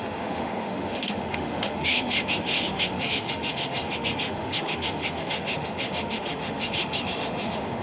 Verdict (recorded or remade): remade